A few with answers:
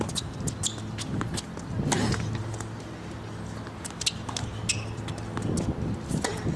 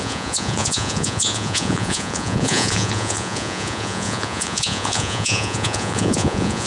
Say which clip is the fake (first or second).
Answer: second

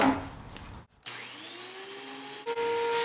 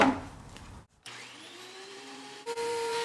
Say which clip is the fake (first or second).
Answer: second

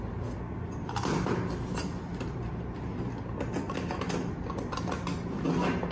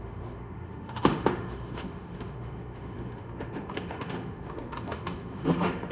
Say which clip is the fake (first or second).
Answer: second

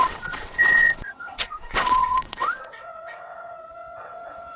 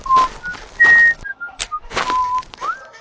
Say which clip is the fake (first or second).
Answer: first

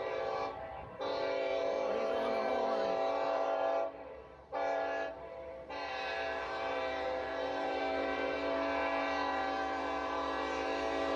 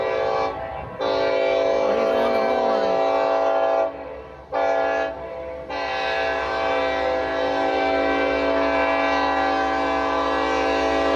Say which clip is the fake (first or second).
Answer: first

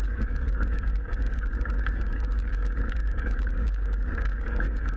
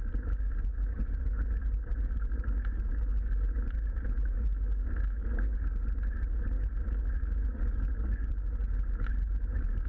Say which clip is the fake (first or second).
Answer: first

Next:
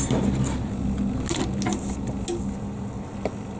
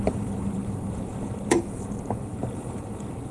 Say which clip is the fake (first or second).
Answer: second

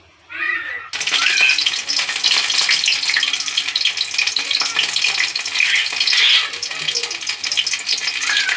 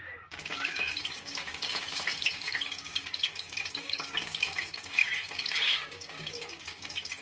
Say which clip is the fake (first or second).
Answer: second